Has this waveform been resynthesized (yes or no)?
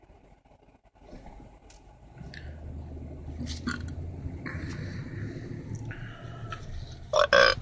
no